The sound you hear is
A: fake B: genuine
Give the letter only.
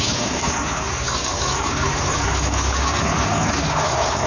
A